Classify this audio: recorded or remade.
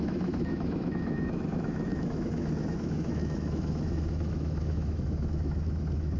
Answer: remade